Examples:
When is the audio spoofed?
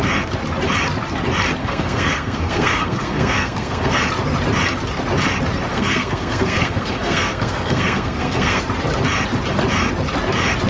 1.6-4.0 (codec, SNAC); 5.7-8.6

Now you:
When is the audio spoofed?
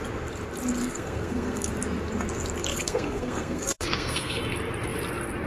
0.8-1.7 (codec, SNAC); 2.7-4.4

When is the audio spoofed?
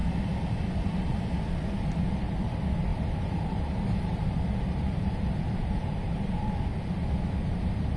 0.8-6.7 (vocoder, BigVGAN v2); 7.4-8.0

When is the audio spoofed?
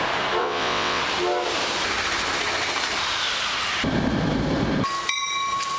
0.4-1.0 (vocoder, WaveNeXt)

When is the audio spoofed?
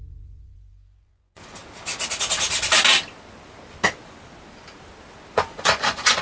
0.0-1.6 (vocoder, Vocos); 5.3-6.2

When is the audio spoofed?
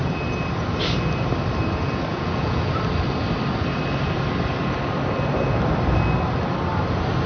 2.1-2.7 (vocoder, Vocos)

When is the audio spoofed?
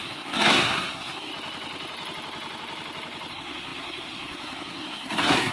0.0-1.3 (codec, SNAC); 3.3-5.5